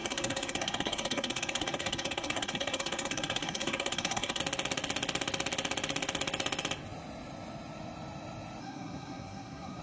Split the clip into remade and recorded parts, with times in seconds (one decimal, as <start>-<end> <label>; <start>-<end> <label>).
0.0-4.4 remade; 4.4-8.6 recorded; 8.6-9.8 remade